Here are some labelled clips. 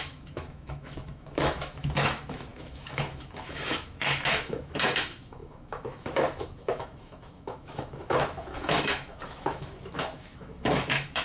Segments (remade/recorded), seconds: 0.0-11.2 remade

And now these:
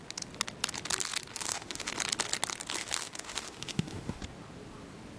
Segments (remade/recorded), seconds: 0.0-1.3 recorded; 1.3-1.9 remade; 1.9-2.8 recorded; 2.8-4.2 remade; 4.2-5.2 recorded

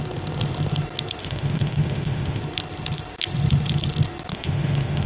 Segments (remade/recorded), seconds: 0.0-1.2 recorded; 1.2-2.4 remade; 2.4-4.3 recorded; 4.3-5.1 remade

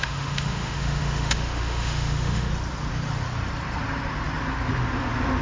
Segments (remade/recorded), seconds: 0.0-2.5 remade; 2.5-5.4 recorded

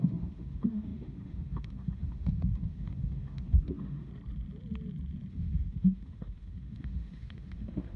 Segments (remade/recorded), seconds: 0.0-4.1 remade; 4.1-5.3 recorded; 5.3-8.0 remade

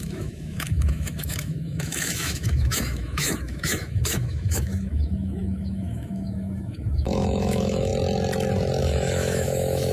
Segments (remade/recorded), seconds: 0.0-7.9 remade; 7.9-8.8 recorded; 8.8-9.9 remade

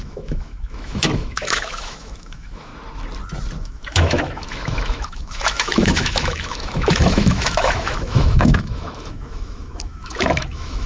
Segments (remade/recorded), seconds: 0.0-2.7 remade; 2.7-3.6 recorded; 3.6-10.9 remade

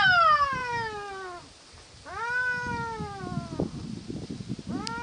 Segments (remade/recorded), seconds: 0.0-5.0 recorded